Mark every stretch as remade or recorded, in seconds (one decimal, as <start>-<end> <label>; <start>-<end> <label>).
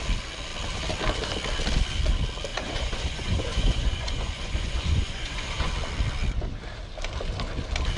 0.0-2.5 recorded; 2.5-5.7 remade; 5.7-8.0 recorded